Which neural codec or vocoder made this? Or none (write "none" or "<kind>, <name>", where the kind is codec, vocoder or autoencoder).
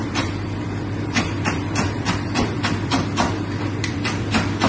vocoder, BigVGAN v2